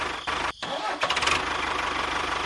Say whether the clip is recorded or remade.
recorded